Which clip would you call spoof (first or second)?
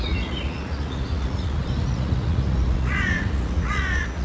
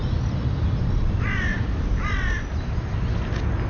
first